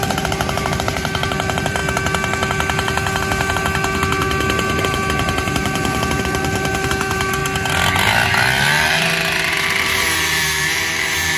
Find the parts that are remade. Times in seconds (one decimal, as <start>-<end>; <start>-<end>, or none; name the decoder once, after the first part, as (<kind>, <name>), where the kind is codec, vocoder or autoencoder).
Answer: 0.0-1.8 (vocoder, BigVGAN v2); 4.8-7.4; 8.9-11.4